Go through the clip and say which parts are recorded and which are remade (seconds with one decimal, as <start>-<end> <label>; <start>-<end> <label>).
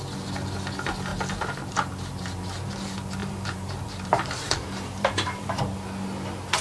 0.0-1.1 recorded; 1.1-2.0 remade; 2.0-3.2 recorded; 3.2-5.6 remade; 5.6-6.6 recorded